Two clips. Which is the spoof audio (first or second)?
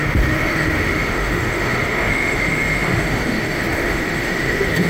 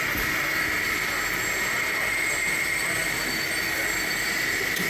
first